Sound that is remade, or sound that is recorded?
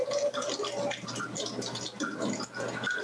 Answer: recorded